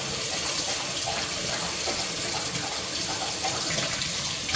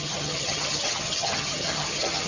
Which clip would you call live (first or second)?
first